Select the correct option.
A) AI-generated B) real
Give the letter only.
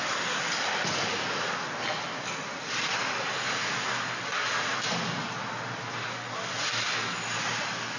B